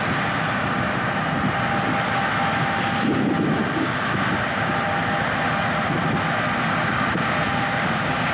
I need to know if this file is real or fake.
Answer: real